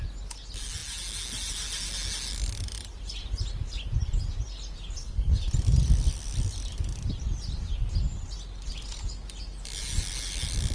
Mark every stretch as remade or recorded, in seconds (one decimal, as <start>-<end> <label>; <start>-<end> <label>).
0.0-5.0 recorded; 5.0-5.5 remade; 5.5-10.7 recorded